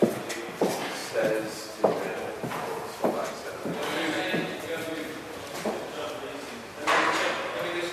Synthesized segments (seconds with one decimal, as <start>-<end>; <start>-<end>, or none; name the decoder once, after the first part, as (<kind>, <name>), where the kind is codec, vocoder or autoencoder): none